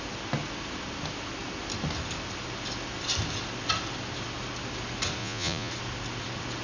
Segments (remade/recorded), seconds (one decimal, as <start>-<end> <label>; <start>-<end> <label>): 0.0-5.2 recorded; 5.2-5.7 remade; 5.7-6.6 recorded